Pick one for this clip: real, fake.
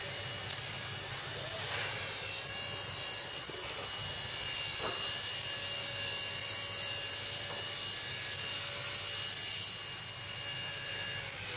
real